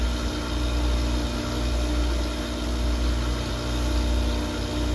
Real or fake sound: real